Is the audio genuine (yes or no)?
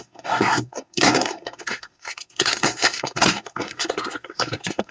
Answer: no